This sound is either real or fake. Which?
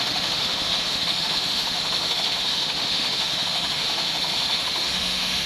fake